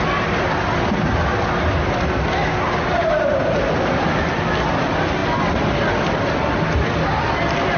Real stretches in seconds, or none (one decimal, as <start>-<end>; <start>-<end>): 0.0-7.8